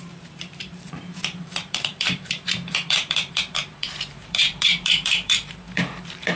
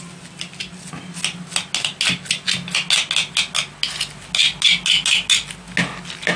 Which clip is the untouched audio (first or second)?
second